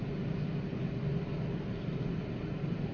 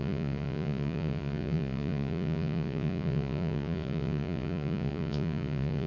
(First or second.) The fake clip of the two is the second